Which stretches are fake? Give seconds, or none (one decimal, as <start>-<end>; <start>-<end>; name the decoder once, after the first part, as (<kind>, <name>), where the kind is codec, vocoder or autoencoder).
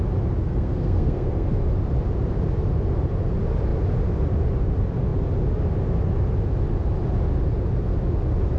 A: 0.4-1.5 (codec, SNAC)